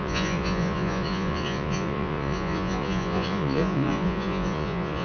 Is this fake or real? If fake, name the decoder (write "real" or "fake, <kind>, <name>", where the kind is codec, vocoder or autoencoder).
fake, vocoder, Vocos